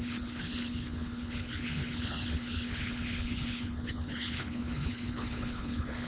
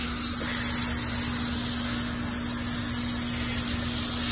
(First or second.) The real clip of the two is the second